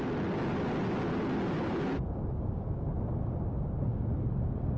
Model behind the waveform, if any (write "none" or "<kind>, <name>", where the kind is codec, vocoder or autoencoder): none